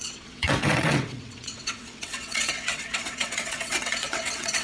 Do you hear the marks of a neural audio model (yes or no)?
yes